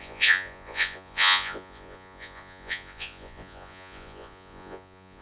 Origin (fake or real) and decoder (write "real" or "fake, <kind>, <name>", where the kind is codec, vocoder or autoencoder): fake, vocoder, Vocos